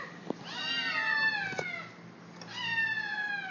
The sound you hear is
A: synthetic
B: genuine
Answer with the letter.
B